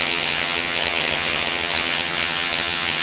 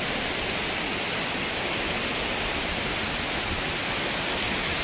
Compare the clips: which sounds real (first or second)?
second